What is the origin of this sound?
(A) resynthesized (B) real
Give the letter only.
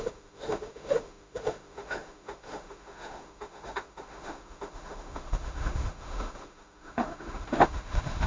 A